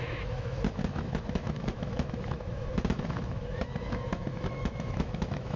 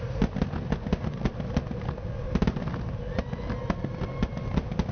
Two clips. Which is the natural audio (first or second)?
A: second